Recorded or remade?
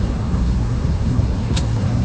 remade